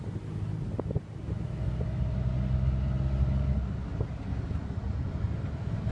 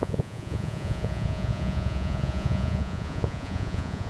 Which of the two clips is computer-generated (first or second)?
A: second